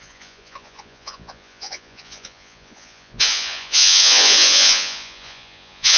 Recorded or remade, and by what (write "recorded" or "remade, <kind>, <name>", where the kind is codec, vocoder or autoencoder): remade, vocoder, Vocos